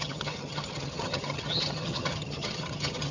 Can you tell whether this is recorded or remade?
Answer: remade